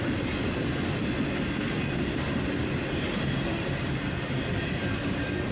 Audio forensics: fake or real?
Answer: real